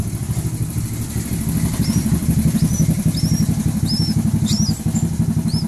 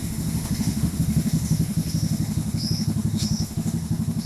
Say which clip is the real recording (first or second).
first